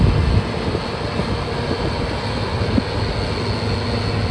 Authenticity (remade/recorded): recorded